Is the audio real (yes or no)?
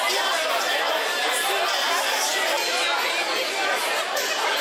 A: yes